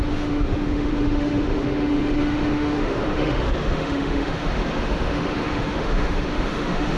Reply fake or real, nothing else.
fake